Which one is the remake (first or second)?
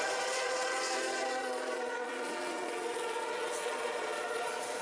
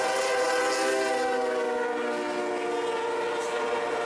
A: first